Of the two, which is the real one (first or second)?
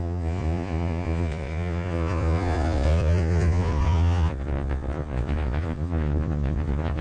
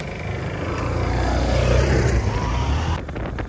second